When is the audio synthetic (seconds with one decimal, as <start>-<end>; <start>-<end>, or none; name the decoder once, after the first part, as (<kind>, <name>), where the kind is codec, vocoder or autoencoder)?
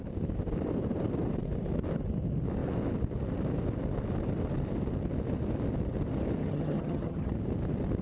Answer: 6.4-7.3 (vocoder, HiFi-GAN)